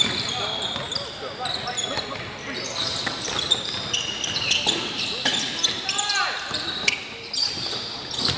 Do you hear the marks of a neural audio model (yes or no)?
no